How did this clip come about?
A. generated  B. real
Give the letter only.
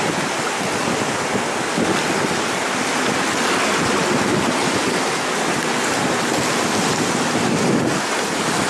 B